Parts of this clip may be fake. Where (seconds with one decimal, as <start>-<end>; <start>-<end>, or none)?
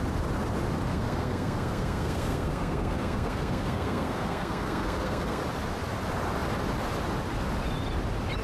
0.9-5.4